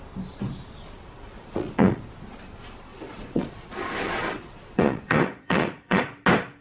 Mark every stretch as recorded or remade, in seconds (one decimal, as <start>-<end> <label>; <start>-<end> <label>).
0.0-0.8 recorded; 0.8-2.0 remade; 2.0-2.9 recorded; 2.9-6.0 remade; 6.0-6.6 recorded